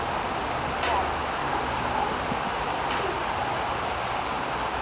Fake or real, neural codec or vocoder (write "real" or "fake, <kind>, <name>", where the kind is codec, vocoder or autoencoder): real